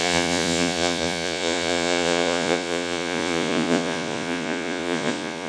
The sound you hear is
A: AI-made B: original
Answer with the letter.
A